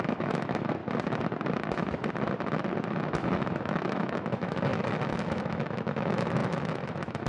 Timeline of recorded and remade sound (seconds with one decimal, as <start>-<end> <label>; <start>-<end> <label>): 0.0-0.8 remade; 0.8-2.9 recorded; 2.9-7.3 remade